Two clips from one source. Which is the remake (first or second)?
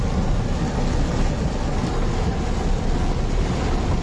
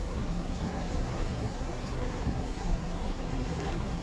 second